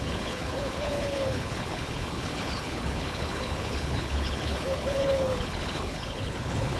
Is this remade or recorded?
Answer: remade